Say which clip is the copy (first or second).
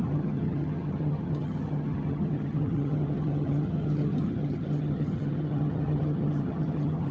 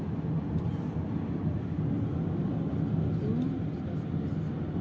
first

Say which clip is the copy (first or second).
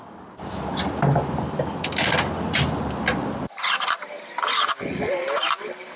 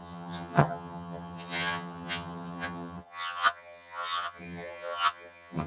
second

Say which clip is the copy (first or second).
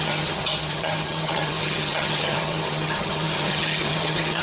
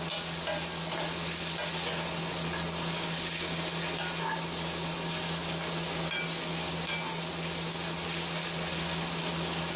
first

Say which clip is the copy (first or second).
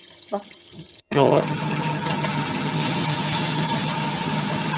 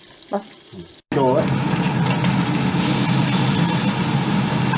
first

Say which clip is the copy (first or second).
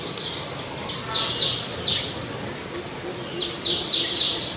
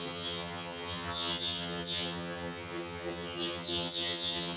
second